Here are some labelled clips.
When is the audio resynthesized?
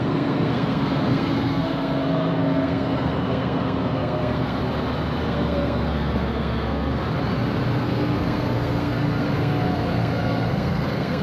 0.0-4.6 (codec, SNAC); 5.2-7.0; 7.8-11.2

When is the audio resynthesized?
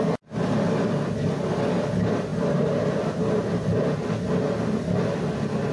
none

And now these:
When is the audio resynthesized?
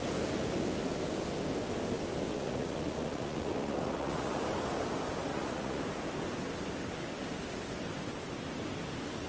2.3-4.4 (vocoder, Vocos); 5.3-5.8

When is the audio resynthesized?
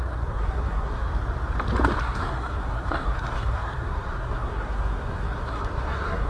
0.0-1.1 (codec, SNAC); 2.0-6.3